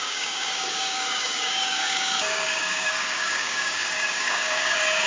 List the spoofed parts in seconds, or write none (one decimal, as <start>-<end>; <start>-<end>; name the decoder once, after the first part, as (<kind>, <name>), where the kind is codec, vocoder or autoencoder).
0.0-5.1 (codec, DAC)